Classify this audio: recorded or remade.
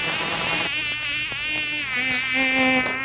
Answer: recorded